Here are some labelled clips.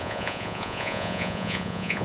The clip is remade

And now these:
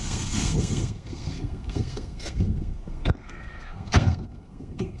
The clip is remade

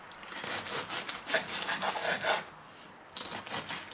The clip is recorded